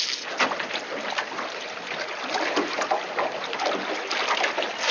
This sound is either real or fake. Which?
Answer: real